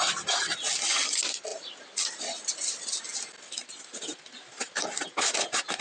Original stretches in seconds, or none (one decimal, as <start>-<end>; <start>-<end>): 0.0-5.8